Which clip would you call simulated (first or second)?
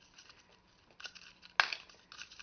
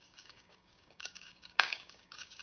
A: second